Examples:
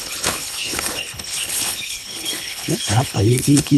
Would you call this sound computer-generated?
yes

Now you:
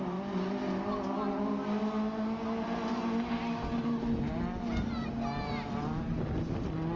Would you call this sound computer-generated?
no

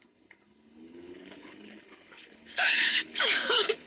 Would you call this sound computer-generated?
yes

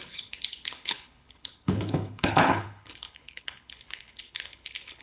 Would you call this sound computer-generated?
yes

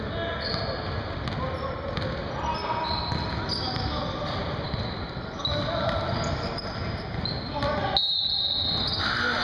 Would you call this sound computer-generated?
no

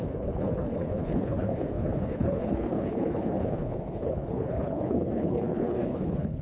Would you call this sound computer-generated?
yes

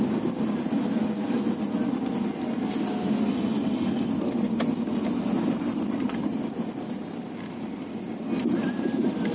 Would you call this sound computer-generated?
no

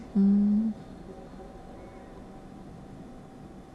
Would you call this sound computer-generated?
no